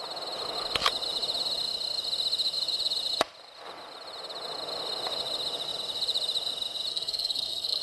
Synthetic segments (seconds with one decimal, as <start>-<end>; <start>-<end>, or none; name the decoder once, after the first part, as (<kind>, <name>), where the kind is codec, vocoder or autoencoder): 6.9-7.8 (codec, SNAC)